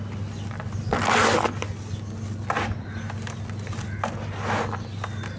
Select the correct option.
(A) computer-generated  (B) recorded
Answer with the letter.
B